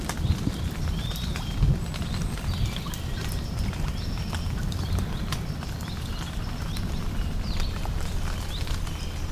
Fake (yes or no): yes